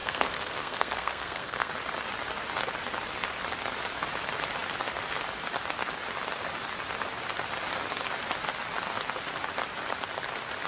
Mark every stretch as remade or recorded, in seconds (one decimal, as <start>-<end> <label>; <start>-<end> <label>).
0.0-1.7 remade; 1.7-10.7 recorded